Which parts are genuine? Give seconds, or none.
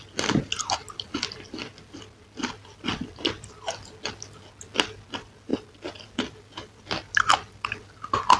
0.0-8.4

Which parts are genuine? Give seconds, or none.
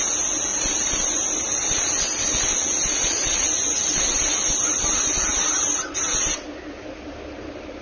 0.0-0.5; 1.2-5.3; 5.9-7.8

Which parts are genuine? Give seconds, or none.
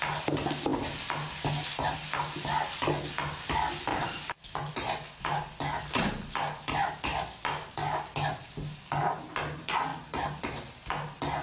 0.0-3.9; 4.7-11.4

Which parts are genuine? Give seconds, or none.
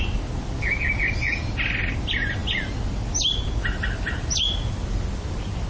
0.0-5.7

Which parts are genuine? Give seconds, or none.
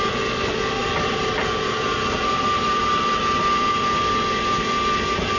0.0-0.8; 3.2-5.4